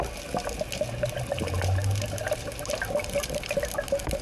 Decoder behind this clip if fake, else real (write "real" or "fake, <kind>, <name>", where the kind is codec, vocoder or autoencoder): real